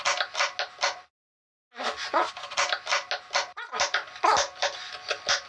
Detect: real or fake real